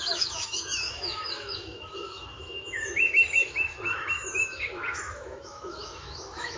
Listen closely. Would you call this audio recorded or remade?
remade